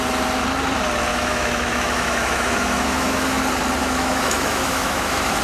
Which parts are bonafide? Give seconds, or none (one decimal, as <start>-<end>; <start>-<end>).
0.0-1.1; 3.4-3.8

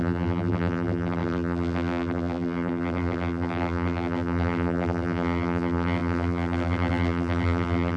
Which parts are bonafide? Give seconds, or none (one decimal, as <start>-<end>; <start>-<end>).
none

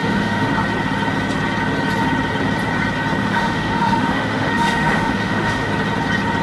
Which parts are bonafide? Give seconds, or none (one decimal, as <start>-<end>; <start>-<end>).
0.5-3.2; 5.7-6.4

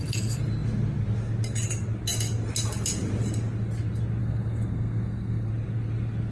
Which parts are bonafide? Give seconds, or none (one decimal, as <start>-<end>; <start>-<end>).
0.0-4.2; 5.5-6.3

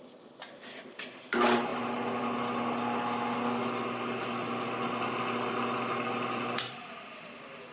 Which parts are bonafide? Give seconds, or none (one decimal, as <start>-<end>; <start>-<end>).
0.0-7.7

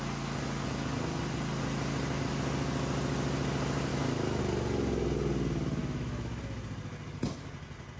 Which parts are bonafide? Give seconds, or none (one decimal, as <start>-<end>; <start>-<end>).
0.0-3.9; 4.4-5.8; 6.4-8.0

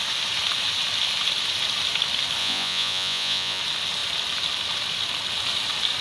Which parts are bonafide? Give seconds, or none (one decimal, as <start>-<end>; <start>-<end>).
0.0-2.4; 3.6-6.0

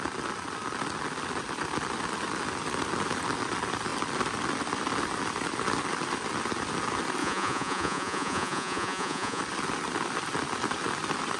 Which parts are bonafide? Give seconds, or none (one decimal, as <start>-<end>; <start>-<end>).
0.0-7.2; 9.4-11.4